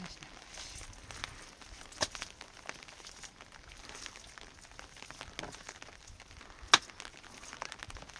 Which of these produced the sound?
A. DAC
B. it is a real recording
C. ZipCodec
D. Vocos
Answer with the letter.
B